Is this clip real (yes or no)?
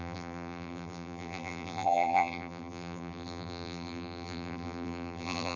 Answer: no